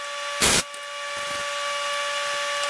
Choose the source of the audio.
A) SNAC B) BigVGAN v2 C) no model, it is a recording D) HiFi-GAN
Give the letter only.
C